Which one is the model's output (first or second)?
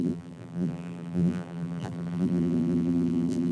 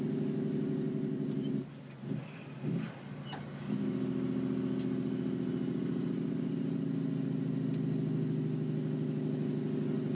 first